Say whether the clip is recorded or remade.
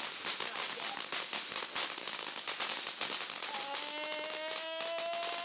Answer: recorded